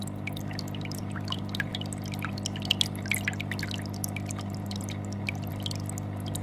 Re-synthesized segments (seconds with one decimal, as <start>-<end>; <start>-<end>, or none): none